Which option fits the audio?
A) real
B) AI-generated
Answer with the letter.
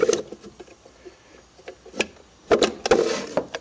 A